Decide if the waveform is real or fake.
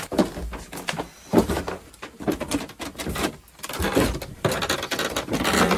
real